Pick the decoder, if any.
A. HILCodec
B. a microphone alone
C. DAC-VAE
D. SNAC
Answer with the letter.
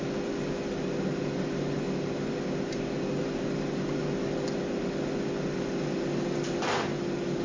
B